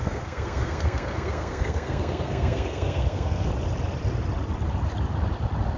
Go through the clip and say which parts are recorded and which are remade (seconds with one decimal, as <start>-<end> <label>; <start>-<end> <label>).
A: 0.0-3.5 remade; 3.5-5.8 recorded